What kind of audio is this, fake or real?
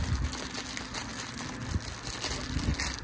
real